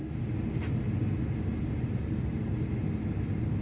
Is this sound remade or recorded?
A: recorded